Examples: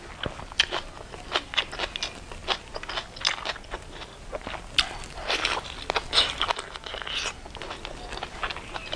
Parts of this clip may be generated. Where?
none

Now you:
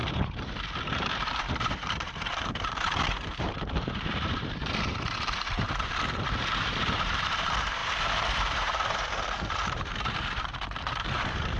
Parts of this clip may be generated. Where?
0.0-11.6 (vocoder, BigVGAN v2)

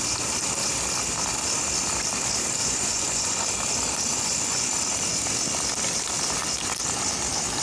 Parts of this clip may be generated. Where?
2.6-3.4 (vocoder, Vocos); 4.1-4.7

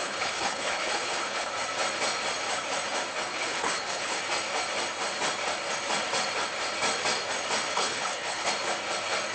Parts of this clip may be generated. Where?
0.0-1.5 (codec, HILCodec); 3.3-4.2; 7.7-8.5

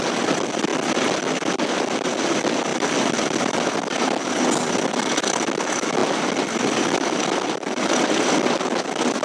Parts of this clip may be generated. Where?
2.7-3.4 (vocoder, BigVGAN v2)

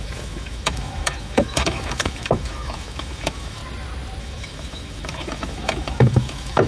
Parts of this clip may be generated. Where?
0.0-3.6 (autoencoder, DAC-VAE); 4.2-6.7